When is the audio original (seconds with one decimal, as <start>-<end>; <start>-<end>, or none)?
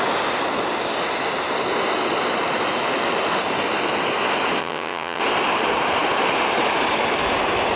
0.0-4.6; 5.2-7.8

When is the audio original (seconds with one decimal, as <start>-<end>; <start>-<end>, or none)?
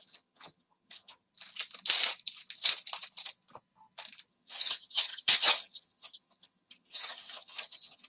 1.3-4.3